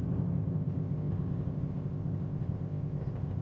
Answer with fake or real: fake